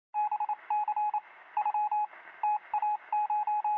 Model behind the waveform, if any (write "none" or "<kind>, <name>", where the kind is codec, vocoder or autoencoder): none